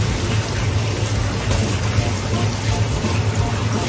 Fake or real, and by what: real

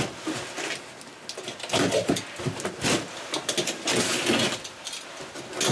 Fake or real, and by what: real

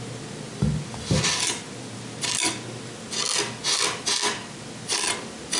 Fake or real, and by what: real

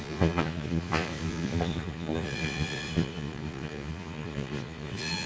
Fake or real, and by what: fake, vocoder, Vocos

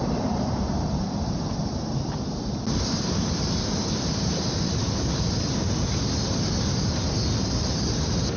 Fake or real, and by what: real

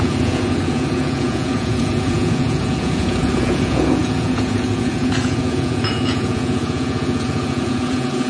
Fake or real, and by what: fake, vocoder, Vocos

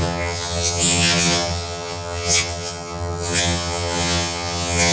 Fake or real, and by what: fake, vocoder, HiFi-GAN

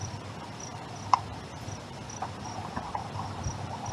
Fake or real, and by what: fake, vocoder, BigVGAN v2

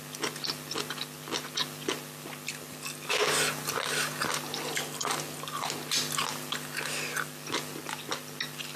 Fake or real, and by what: real